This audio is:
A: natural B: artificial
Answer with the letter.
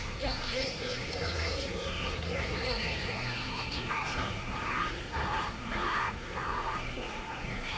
B